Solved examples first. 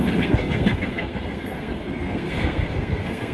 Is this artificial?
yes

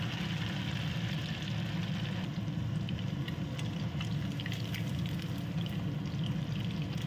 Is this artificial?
no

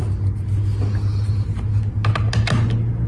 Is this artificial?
no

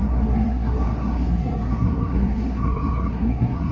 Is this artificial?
yes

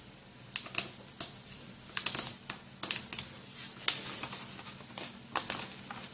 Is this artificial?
no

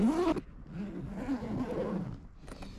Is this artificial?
no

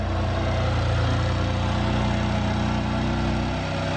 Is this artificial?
no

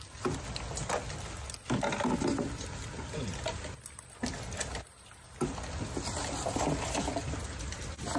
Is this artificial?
no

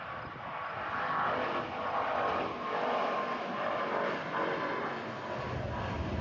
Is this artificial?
no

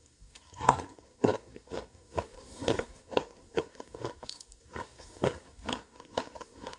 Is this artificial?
yes